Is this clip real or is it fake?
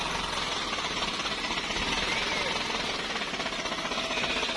real